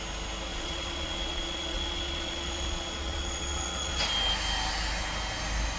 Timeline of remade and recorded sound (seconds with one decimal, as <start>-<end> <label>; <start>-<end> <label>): 0.0-0.5 recorded; 0.5-4.0 remade; 4.0-5.8 recorded